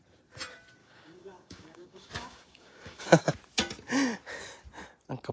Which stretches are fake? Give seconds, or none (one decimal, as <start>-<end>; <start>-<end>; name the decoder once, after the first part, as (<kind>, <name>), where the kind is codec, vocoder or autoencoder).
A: 0.8-3.3 (codec, DAC)